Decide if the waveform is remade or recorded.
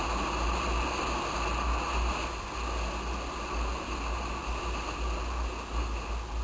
recorded